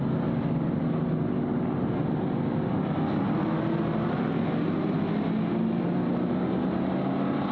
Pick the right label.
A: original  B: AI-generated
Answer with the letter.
A